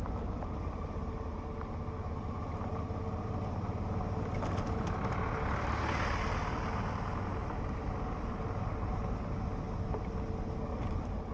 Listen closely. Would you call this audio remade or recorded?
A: recorded